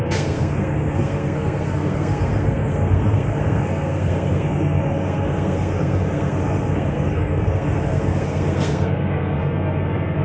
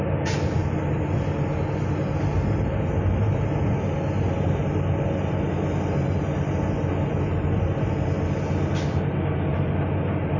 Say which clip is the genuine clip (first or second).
second